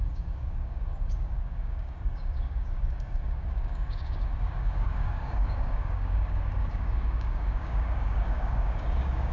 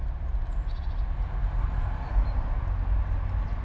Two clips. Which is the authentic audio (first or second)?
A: second